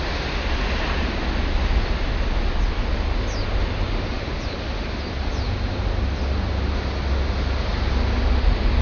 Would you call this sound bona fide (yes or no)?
yes